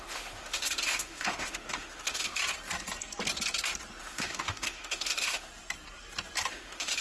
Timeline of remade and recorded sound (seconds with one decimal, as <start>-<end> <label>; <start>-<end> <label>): 0.0-2.4 remade; 2.4-4.0 recorded; 4.0-5.5 remade; 5.5-6.5 recorded; 6.5-7.0 remade